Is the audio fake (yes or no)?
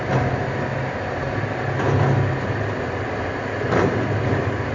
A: no